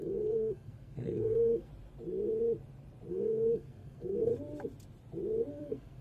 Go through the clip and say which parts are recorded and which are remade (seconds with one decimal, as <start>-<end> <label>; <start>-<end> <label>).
0.0-1.7 remade; 1.7-3.1 recorded; 3.1-4.3 remade; 4.3-5.5 recorded; 5.5-6.0 remade